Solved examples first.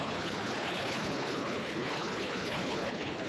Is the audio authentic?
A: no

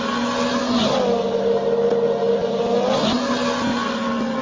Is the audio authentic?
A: yes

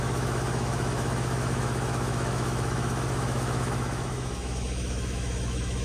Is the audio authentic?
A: no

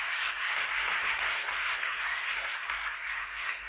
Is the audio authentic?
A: no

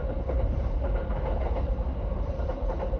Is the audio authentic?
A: yes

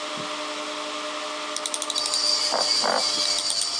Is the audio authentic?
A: yes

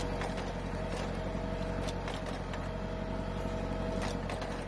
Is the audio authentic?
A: yes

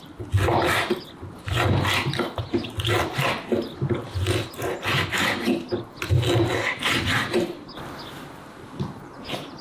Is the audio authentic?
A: yes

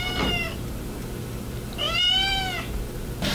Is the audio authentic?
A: yes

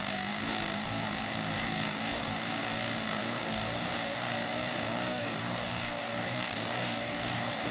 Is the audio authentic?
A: no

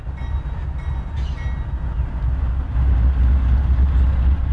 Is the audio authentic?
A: yes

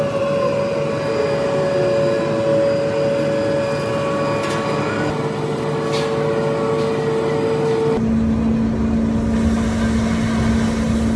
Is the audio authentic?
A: yes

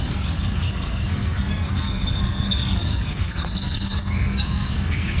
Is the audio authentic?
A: no